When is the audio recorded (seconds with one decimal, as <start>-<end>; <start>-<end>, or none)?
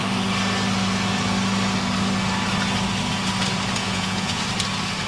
0.0-3.8; 4.4-5.1